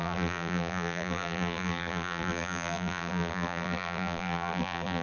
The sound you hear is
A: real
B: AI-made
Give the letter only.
B